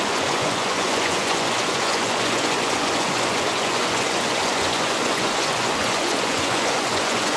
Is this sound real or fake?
fake